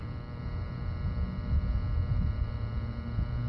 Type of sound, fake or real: real